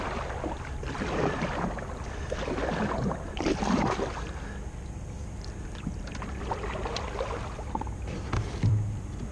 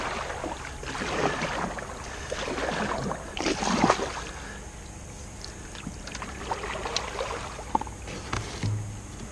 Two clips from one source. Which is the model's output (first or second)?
first